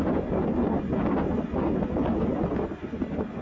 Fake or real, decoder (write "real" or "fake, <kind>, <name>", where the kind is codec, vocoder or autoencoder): real